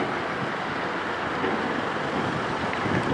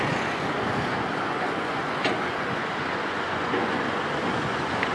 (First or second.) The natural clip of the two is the first